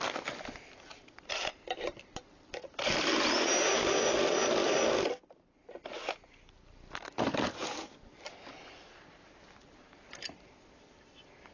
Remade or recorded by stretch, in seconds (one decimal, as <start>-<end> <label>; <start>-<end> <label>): 0.0-11.5 recorded